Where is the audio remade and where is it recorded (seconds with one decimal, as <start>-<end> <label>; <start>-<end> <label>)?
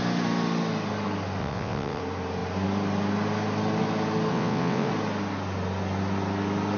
0.0-1.4 recorded; 1.4-2.0 remade; 2.0-4.3 recorded; 4.3-4.9 remade; 4.9-6.8 recorded